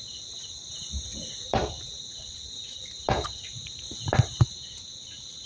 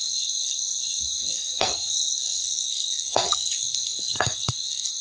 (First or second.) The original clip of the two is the first